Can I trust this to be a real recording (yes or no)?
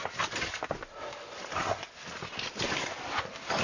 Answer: yes